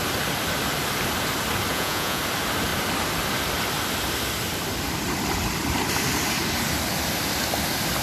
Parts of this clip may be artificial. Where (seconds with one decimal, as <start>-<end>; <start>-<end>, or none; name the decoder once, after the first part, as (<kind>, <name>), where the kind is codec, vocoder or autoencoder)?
1.7-2.2 (vocoder, Vocos)